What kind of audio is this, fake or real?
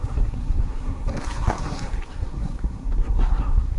fake